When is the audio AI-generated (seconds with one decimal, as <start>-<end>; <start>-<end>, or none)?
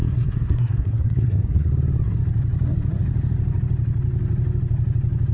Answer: 0.0-1.7